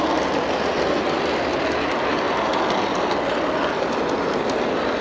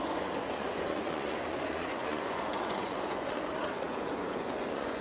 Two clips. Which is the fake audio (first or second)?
second